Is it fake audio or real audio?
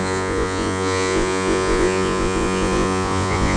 fake